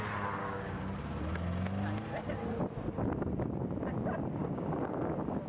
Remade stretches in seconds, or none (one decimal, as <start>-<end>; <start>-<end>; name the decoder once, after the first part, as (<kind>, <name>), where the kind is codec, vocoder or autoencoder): 0.4-1.2 (codec, DAC); 4.4-5.1